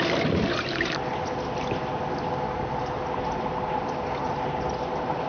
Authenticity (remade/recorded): recorded